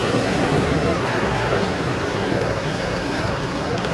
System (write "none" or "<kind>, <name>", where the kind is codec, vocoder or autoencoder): codec, SNAC